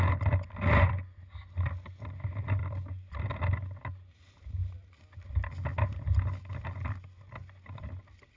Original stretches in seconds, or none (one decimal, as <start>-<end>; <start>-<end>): 0.0-8.4